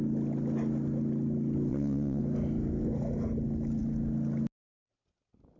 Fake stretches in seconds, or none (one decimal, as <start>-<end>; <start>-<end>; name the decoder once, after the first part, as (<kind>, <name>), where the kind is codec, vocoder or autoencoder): 1.7-2.2 (vocoder, WaveNeXt)